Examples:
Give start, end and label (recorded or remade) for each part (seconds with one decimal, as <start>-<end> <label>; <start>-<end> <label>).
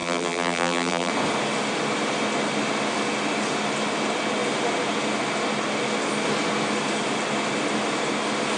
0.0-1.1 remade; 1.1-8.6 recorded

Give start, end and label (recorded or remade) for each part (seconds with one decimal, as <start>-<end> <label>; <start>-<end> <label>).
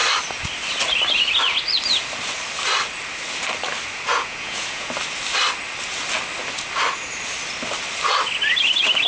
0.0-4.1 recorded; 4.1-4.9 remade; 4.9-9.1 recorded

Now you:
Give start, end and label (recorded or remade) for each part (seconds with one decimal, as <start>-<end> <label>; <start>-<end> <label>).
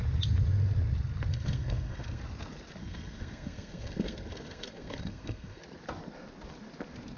0.0-1.3 recorded; 1.3-2.2 remade; 2.2-2.8 recorded; 2.8-5.6 remade; 5.6-7.2 recorded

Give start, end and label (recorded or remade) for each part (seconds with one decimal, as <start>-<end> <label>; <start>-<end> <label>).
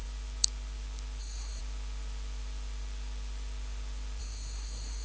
0.0-1.2 recorded; 1.2-1.6 remade; 1.6-4.2 recorded; 4.2-5.0 remade